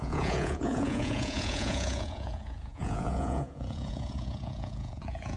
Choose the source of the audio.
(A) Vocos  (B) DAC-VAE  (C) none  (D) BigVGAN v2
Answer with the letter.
A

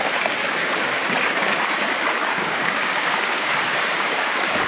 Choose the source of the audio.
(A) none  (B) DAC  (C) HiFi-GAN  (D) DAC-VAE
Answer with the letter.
B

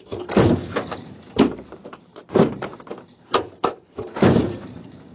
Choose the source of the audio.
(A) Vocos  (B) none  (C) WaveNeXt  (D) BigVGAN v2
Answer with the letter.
D